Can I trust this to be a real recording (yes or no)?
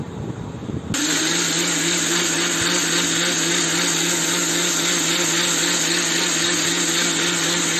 yes